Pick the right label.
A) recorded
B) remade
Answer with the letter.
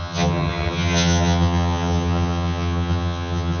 B